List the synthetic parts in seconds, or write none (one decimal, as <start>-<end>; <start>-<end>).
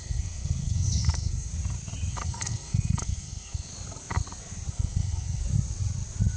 0.0-1.5; 2.1-3.7; 4.7-5.4